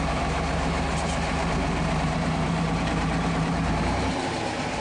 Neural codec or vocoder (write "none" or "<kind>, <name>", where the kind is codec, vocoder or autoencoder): vocoder, BigVGAN v2